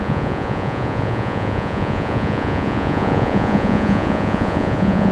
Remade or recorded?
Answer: remade